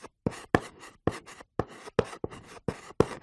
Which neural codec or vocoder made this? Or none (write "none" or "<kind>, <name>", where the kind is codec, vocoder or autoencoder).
none